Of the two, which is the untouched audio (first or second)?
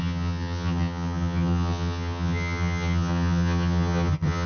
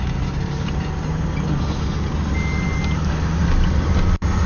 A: second